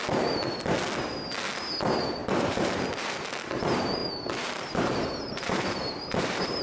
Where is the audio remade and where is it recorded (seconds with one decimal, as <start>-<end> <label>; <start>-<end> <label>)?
0.0-2.2 recorded; 2.2-3.3 remade; 3.3-4.0 recorded; 4.0-6.6 remade